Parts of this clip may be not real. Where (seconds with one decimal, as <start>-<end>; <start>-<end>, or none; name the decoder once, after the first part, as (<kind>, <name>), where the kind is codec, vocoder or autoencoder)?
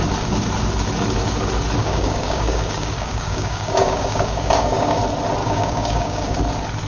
1.8-5.0 (codec, DAC); 5.4-6.4